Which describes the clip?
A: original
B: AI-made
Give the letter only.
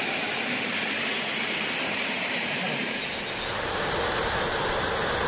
A